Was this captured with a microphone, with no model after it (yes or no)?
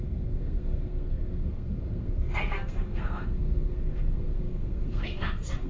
no